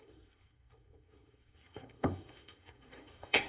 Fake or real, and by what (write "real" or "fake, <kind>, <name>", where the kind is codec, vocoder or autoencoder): fake, codec, SNAC